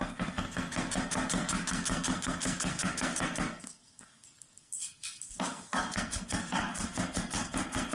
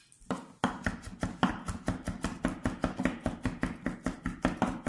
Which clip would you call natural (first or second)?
second